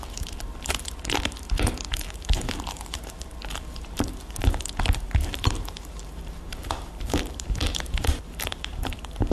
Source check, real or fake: fake